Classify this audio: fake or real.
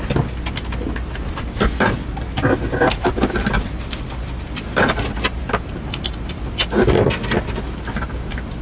fake